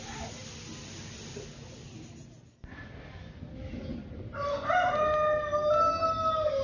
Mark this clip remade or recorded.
recorded